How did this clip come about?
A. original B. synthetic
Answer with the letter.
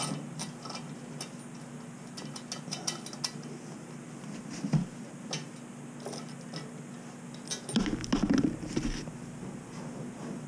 A